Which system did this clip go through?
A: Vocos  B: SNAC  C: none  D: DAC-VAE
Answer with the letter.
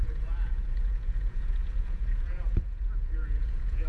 A